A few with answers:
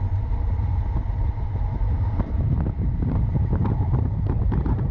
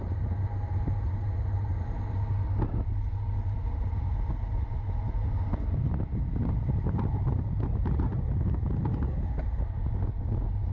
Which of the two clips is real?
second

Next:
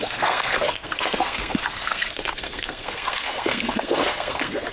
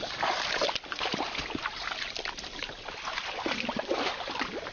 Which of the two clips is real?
second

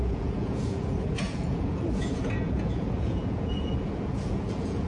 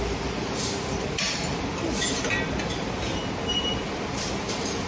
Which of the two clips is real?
second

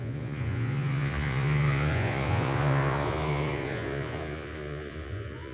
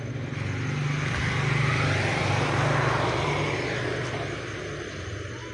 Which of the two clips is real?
second